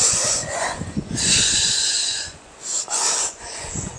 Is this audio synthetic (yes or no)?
yes